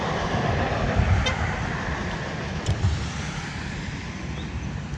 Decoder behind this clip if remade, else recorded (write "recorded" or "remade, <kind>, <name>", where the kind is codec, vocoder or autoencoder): remade, vocoder, BigVGAN v2